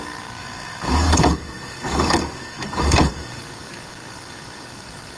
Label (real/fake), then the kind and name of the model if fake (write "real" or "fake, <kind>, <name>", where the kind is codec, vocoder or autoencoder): fake, codec, DAC